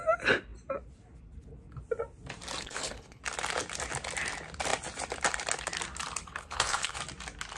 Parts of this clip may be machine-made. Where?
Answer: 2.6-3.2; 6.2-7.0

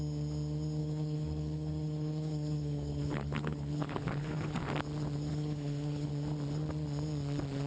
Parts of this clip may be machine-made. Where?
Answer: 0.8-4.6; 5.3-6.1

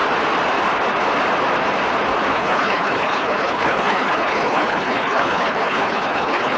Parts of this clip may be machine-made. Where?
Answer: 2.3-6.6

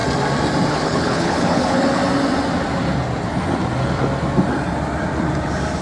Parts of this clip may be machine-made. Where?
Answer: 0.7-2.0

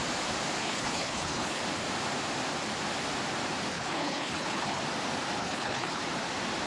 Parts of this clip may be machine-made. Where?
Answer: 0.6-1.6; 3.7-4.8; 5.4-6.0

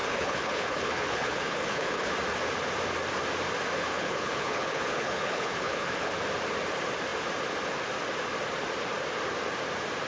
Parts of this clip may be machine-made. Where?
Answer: 0.0-2.1; 3.8-6.1